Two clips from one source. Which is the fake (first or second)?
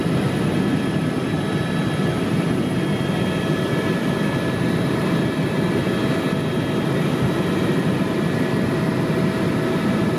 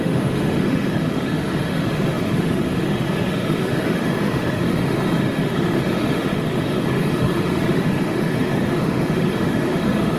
second